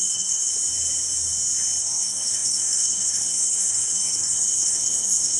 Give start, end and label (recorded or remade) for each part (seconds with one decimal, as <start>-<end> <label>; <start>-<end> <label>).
0.0-0.5 remade; 0.5-1.8 recorded; 1.8-5.4 remade